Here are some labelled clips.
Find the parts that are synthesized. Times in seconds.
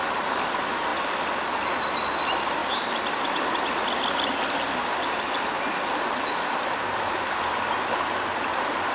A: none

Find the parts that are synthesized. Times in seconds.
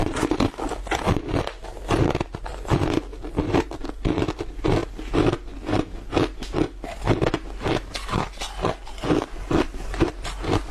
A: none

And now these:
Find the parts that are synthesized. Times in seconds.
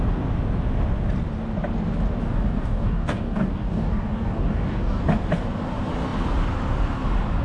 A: 2.2-5.0 (codec, DAC)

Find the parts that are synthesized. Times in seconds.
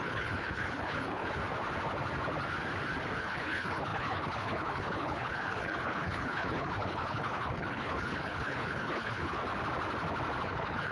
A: 0.0-1.4 (codec, HILCodec); 3.2-9.4; 10.4-10.9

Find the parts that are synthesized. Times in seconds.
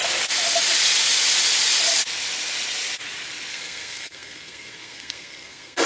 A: 3.5-5.9 (codec, SNAC)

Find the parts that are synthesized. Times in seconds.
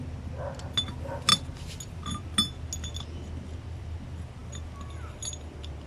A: none